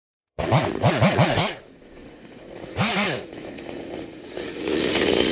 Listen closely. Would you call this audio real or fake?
fake